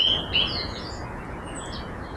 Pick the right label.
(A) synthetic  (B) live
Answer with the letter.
B